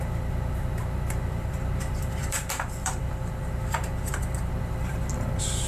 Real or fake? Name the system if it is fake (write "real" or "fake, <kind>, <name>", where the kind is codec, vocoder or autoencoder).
fake, vocoder, BigVGAN v2